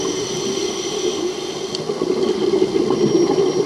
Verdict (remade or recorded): recorded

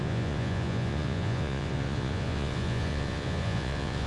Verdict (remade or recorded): remade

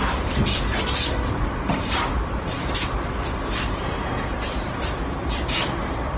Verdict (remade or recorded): remade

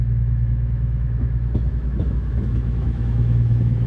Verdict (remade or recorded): remade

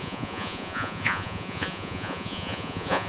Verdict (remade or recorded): remade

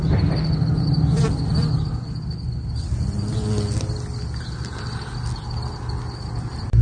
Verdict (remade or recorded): recorded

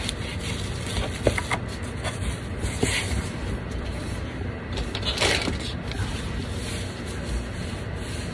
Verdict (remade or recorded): recorded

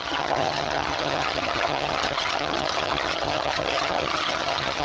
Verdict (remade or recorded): remade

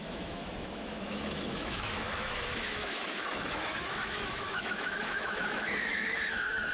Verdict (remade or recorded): remade